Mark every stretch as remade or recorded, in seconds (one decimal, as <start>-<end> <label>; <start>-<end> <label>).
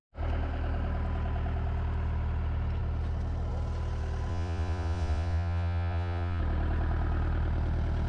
0.0-4.3 recorded; 4.3-6.4 remade; 6.4-8.1 recorded